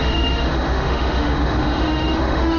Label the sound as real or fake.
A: fake